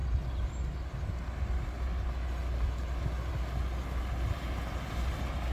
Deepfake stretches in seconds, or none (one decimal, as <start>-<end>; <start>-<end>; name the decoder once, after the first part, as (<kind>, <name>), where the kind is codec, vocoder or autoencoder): none